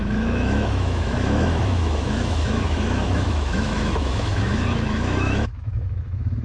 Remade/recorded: remade